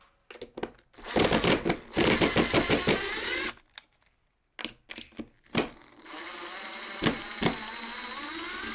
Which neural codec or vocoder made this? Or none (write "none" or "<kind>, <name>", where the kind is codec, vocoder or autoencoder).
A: none